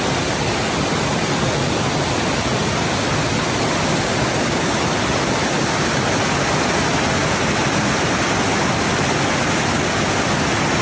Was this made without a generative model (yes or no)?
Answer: yes